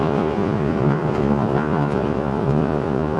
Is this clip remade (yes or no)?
yes